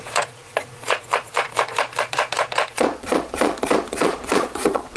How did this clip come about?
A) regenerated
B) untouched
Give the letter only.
A